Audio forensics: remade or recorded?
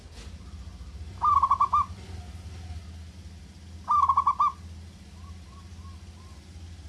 recorded